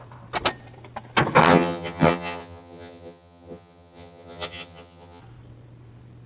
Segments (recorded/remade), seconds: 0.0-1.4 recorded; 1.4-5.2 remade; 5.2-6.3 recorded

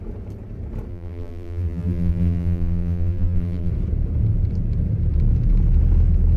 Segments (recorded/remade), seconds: 0.0-0.9 recorded; 0.9-3.7 remade; 3.7-6.4 recorded

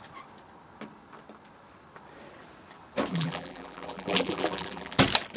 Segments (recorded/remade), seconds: 0.0-3.1 recorded; 3.1-5.0 remade; 5.0-5.4 recorded

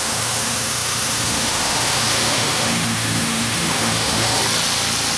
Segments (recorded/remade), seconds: 0.0-4.4 remade; 4.4-5.2 recorded

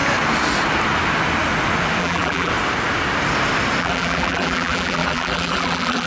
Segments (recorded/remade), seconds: 0.0-2.0 recorded; 2.0-2.5 remade; 2.5-3.8 recorded; 3.8-6.1 remade

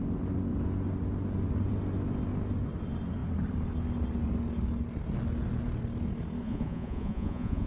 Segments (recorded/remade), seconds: 0.0-6.4 recorded; 6.4-7.7 remade

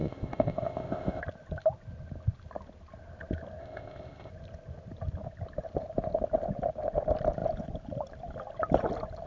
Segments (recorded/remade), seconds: 0.0-1.2 remade; 1.2-3.6 recorded; 3.6-4.3 remade; 4.3-9.3 recorded

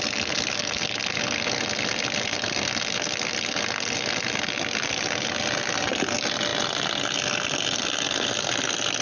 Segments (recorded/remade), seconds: 0.0-9.0 recorded